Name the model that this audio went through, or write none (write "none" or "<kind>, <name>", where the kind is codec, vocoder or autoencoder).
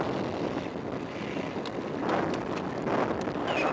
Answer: none